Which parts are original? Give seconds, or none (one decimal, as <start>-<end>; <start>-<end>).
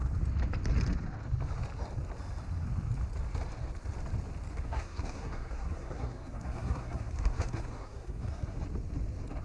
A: 0.0-4.5; 8.6-9.4